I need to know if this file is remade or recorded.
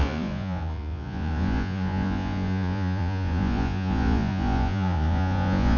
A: remade